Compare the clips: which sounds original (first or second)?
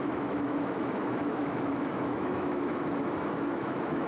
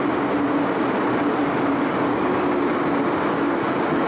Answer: second